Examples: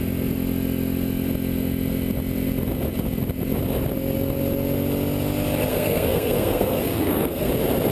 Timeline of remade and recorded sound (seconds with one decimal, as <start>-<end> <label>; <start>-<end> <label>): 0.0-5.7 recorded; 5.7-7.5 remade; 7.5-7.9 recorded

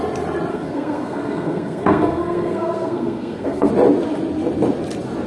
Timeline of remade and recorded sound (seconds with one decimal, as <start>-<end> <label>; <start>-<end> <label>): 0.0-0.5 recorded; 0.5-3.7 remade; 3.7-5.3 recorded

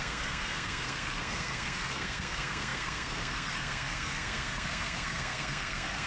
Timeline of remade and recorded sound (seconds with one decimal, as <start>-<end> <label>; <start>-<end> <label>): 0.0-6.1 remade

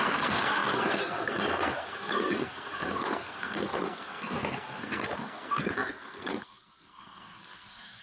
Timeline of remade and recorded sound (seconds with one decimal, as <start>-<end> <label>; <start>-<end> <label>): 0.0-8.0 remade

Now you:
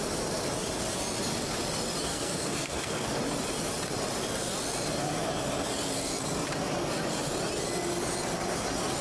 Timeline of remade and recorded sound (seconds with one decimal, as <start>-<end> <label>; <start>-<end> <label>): 0.0-2.1 recorded; 2.1-3.2 remade; 3.2-9.0 recorded

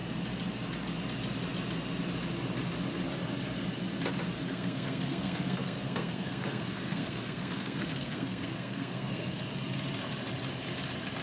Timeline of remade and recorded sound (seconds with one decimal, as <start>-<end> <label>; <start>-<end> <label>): 0.0-4.5 recorded; 4.5-9.4 remade; 9.4-11.2 recorded